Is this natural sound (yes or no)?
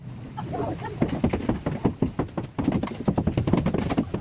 yes